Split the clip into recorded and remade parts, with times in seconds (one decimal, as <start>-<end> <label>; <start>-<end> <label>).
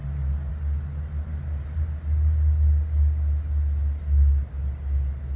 0.0-5.4 recorded